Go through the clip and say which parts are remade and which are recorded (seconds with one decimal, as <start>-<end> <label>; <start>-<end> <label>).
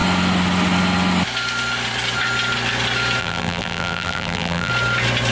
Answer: 0.0-3.2 recorded; 3.2-4.7 remade; 4.7-5.3 recorded